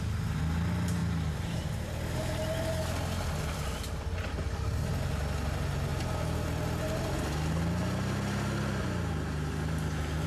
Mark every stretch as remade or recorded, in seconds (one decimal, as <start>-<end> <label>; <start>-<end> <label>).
0.0-10.3 recorded